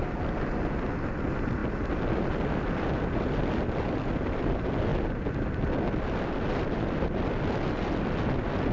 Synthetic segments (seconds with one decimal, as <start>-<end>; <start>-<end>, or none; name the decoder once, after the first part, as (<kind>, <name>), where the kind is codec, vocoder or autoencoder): none